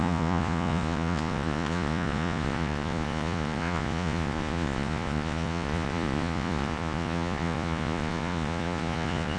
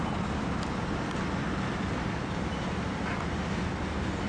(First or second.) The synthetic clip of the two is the first